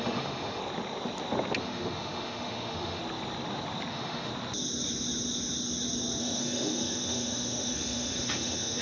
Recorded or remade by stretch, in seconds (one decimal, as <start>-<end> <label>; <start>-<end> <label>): 0.0-0.6 remade; 0.6-1.6 recorded; 1.6-3.0 remade; 3.0-3.9 recorded; 3.9-4.3 remade; 4.3-6.2 recorded; 6.2-8.8 remade

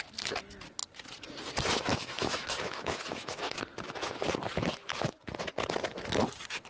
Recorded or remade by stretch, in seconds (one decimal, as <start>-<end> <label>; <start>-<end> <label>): 0.0-1.9 recorded; 1.9-3.5 remade; 3.5-6.7 recorded

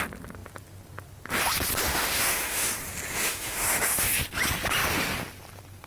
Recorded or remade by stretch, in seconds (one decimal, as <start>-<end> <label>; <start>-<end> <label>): 0.0-1.9 recorded; 1.9-2.7 remade; 2.7-3.1 recorded; 3.1-4.2 remade; 4.2-5.9 recorded

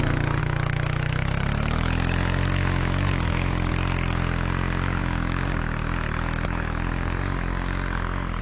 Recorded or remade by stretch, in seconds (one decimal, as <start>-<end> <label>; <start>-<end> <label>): 0.0-0.4 recorded; 0.4-3.7 remade; 3.7-8.4 recorded

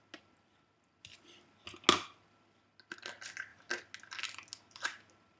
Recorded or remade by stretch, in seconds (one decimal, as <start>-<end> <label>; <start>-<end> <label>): 0.0-5.4 recorded

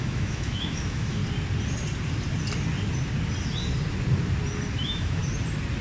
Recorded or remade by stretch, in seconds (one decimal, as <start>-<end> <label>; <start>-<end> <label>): 0.0-1.2 remade; 1.2-4.7 recorded; 4.7-5.2 remade; 5.2-5.8 recorded

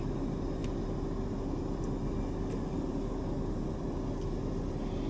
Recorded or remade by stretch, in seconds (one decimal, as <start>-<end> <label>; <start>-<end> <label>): 0.0-5.1 recorded

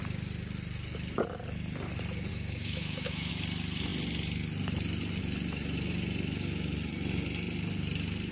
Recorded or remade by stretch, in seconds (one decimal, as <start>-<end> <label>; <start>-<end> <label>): 0.0-2.3 recorded; 2.3-3.3 remade; 3.3-8.3 recorded